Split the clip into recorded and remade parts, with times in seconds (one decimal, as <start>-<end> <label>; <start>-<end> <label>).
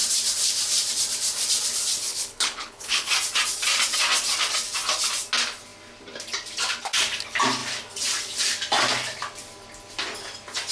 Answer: 0.0-2.0 recorded; 2.0-3.1 remade; 3.1-10.7 recorded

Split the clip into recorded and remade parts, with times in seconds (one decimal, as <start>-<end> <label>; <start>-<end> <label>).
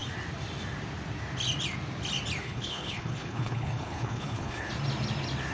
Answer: 0.0-2.4 recorded; 2.4-4.7 remade; 4.7-5.5 recorded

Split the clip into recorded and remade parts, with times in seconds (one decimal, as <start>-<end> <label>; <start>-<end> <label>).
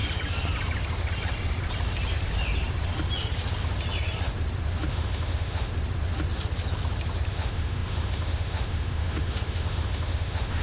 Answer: 0.0-4.9 recorded; 4.9-5.7 remade; 5.7-7.3 recorded; 7.3-10.6 remade